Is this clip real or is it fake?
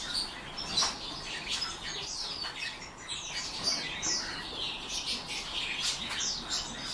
real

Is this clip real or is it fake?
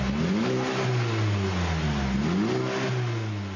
real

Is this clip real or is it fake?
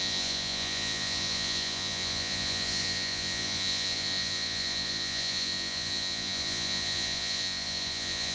fake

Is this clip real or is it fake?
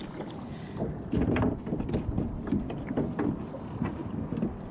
real